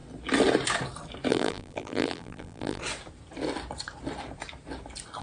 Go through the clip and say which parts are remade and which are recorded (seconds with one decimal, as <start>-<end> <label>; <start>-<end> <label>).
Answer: 0.0-1.3 recorded; 1.3-2.8 remade; 2.8-5.2 recorded